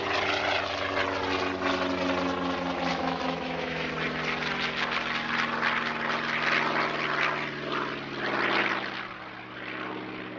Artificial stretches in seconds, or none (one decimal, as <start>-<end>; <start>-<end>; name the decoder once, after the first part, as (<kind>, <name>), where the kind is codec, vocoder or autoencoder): 2.9-3.9 (autoencoder, DAC-VAE)